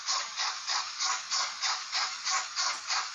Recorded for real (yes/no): no